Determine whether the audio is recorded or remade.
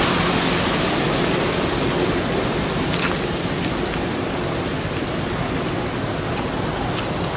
recorded